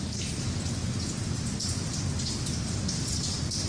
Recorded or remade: recorded